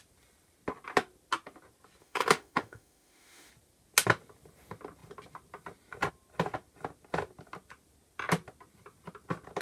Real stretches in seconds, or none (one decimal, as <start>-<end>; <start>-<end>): 0.0-2.0; 3.5-9.6